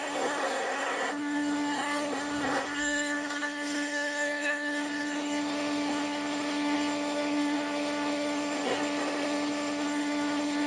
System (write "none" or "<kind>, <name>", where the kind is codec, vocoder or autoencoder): codec, SNAC